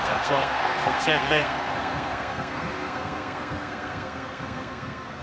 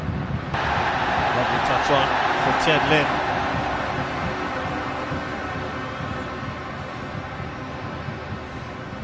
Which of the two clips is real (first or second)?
second